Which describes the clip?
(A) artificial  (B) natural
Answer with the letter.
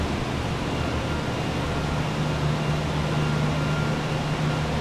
B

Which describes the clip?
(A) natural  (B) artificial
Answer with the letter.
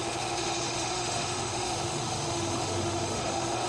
B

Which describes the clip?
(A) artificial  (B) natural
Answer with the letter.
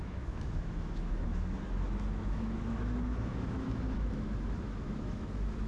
A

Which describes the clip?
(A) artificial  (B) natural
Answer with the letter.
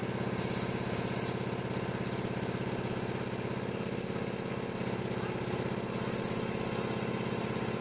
B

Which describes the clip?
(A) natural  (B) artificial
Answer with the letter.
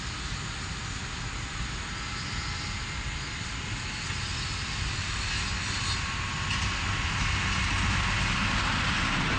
A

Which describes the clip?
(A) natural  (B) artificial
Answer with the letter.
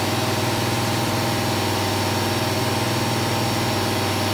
A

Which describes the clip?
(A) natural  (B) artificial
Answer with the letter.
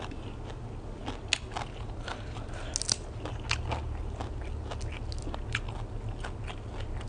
A